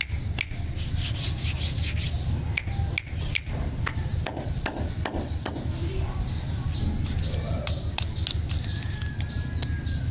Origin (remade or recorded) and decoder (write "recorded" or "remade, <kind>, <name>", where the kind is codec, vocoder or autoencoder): recorded